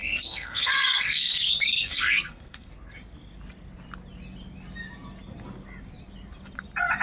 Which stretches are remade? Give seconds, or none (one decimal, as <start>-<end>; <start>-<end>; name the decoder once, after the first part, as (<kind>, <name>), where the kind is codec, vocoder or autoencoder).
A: 0.0-2.7 (codec, SNAC)